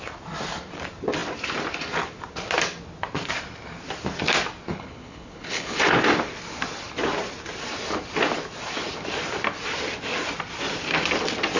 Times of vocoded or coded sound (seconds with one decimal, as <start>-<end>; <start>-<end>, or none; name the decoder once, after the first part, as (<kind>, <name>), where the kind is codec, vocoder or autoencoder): 4.7-5.8 (codec, HILCodec)